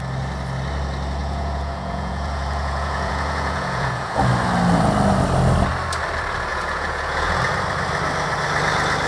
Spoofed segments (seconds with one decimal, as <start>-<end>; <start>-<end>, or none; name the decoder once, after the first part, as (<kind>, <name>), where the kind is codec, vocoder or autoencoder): 1.2-4.2 (vocoder, Vocos); 6.5-7.4